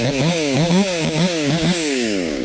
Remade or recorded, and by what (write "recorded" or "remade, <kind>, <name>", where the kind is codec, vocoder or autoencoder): remade, codec, DAC